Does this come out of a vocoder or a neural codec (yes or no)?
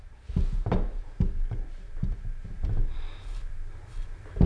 no